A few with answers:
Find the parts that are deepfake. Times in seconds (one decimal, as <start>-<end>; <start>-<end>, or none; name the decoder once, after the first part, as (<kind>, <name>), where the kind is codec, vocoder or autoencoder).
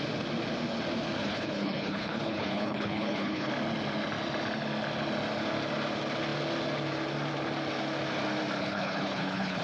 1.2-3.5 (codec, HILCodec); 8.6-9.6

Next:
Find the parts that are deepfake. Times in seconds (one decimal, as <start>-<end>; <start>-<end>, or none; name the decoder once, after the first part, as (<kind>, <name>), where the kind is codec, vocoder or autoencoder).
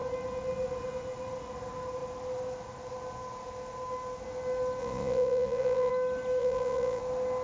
4.8-5.9 (vocoder, Vocos); 6.4-7.0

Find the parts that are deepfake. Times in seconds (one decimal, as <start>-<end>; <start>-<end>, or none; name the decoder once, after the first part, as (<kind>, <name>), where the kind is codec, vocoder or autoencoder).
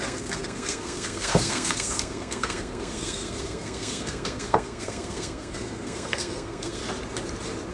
0.0-6.8 (codec, SNAC)